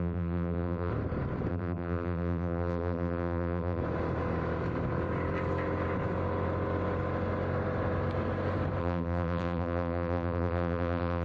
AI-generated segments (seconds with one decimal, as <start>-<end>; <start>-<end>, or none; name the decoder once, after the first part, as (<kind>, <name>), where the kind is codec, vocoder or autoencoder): 0.0-0.9 (vocoder, BigVGAN v2); 1.5-3.8; 8.8-11.2